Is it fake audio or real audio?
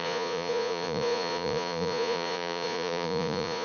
fake